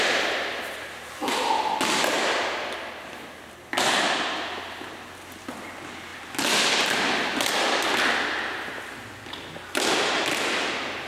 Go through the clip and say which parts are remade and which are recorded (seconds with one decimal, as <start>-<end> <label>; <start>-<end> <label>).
0.0-11.1 recorded